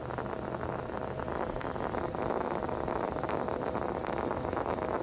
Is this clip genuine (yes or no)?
yes